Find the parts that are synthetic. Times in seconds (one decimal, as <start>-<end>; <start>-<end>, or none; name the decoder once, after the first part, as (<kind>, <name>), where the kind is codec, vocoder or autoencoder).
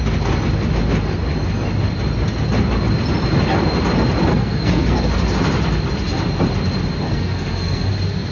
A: 4.3-5.0 (codec, SNAC); 7.1-7.9